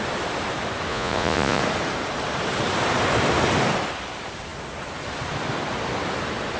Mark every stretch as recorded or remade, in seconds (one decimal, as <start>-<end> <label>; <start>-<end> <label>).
0.0-0.9 recorded; 0.9-1.6 remade; 1.6-6.6 recorded